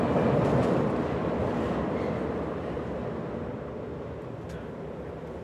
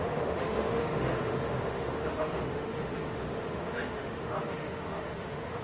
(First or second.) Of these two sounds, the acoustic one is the first